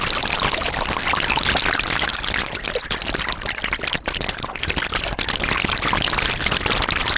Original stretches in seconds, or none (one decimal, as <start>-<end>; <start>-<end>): 0.0-7.2